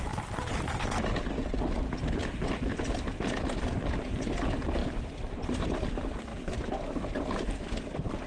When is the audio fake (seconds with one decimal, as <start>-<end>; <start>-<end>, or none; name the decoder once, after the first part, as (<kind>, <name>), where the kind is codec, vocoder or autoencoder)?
4.8-5.7 (vocoder, BigVGAN v2); 6.3-7.8

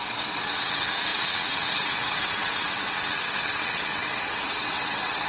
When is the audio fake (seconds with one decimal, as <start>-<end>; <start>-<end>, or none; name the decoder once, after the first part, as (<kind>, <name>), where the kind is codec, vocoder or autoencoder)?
0.0-5.3 (vocoder, WaveNeXt)